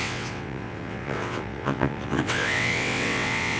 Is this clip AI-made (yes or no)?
yes